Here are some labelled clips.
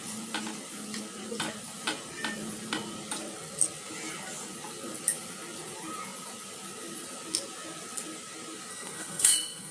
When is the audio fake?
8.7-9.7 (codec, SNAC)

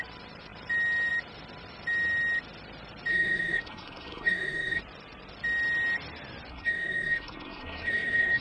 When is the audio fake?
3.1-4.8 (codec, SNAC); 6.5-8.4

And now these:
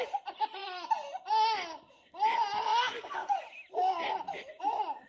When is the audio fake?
none

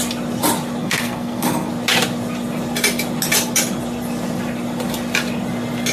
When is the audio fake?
0.8-1.7 (codec, SNAC)

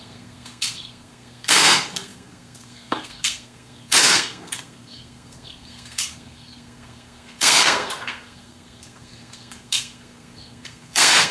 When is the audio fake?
0.0-11.3 (codec, SNAC)